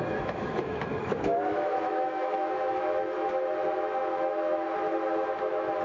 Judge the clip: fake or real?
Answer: fake